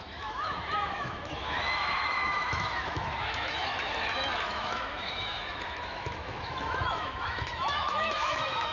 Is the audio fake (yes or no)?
yes